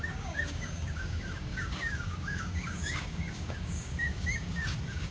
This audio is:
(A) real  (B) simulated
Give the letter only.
B